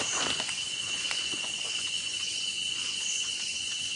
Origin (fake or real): fake